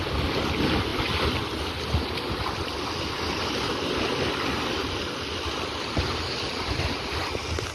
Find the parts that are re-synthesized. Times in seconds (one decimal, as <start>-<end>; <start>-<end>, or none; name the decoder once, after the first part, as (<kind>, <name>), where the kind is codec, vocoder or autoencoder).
none